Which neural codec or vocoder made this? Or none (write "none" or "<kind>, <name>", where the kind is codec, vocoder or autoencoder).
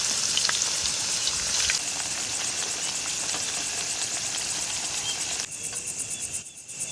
none